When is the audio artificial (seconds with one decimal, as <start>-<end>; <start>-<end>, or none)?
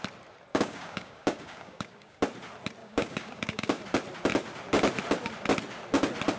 0.5-2.2; 2.8-3.8